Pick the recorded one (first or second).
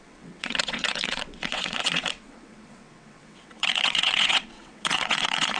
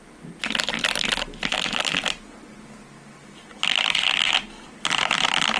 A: second